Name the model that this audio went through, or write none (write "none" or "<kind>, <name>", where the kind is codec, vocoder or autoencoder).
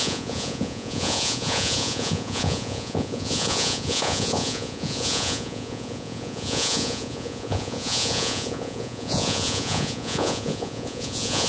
vocoder, Vocos